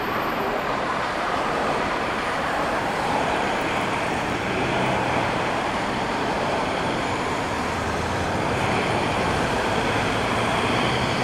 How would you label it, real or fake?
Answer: fake